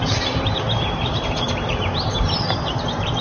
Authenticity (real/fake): fake